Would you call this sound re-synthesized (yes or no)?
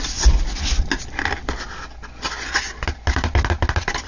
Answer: no